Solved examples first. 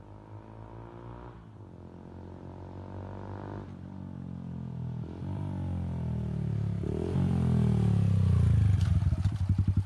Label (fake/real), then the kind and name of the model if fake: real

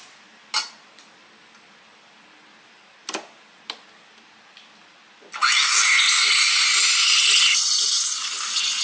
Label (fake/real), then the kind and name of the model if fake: real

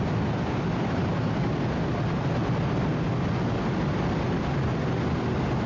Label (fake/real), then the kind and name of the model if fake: real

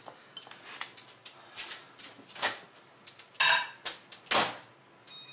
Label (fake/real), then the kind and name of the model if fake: real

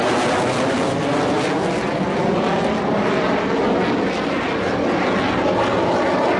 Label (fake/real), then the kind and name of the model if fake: real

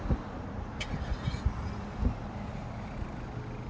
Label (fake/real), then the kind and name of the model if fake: real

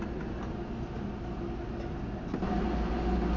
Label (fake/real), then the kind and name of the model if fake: real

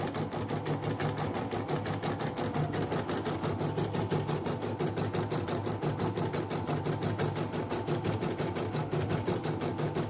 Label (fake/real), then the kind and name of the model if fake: real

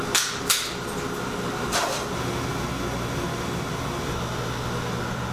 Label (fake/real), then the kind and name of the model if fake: real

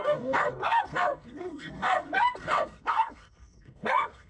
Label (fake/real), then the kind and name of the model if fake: fake, codec, SNAC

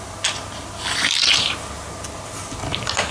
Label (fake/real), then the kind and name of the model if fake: real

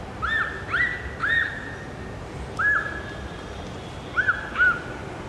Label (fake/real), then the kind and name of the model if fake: real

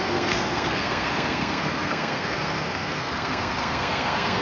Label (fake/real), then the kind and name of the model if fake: fake, codec, SNAC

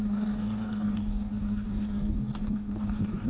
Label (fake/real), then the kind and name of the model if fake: fake, codec, DAC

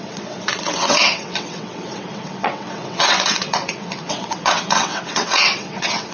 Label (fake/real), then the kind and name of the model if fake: fake, vocoder, WaveNeXt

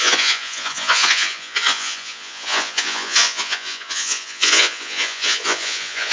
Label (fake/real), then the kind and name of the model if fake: fake, vocoder, Vocos